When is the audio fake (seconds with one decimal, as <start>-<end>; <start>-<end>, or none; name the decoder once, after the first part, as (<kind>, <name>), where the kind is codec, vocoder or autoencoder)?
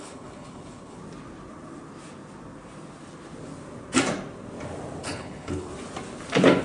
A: 0.0-1.0 (codec, HILCodec); 5.0-5.7